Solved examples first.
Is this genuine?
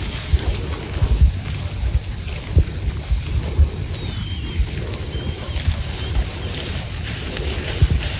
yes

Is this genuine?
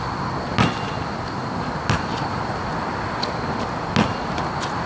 yes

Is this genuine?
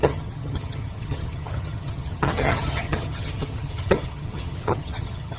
no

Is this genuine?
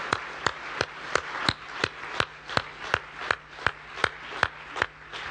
yes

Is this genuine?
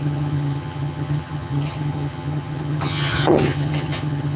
no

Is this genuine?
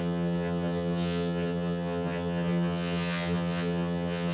no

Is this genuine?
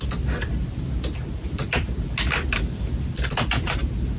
yes